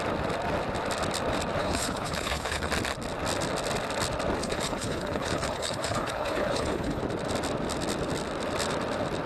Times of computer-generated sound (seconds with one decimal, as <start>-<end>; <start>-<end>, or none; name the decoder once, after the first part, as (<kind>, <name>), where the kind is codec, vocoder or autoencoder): 1.6-2.7 (codec, HILCodec); 4.4-7.0